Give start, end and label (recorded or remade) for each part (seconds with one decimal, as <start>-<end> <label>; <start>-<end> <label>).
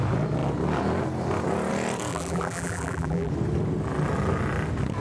0.0-2.1 recorded; 2.1-3.3 remade; 3.3-5.0 recorded